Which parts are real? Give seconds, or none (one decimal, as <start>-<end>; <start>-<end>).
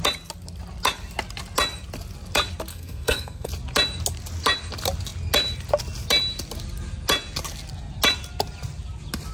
0.0-2.7; 3.5-9.3